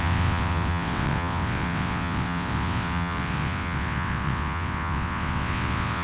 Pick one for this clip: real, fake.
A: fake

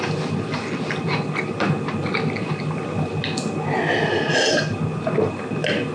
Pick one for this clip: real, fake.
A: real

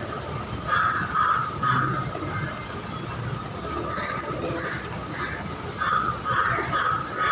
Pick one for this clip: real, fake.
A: fake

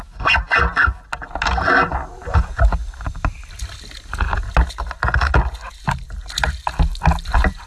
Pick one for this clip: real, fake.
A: real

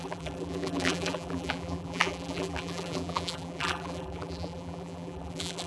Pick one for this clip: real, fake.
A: fake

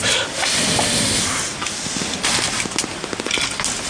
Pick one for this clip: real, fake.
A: real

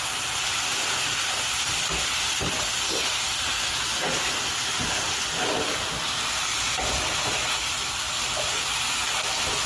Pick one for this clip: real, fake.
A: real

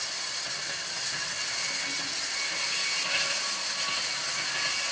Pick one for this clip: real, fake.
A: real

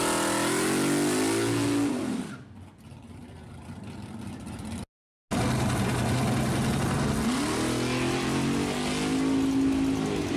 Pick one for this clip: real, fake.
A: real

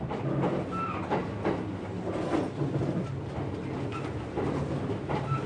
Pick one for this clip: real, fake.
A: real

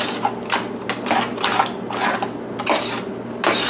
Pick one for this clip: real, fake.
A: real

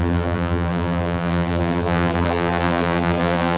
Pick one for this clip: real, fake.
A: fake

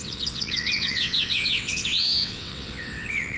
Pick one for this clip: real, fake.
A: fake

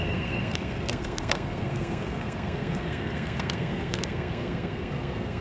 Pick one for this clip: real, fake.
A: fake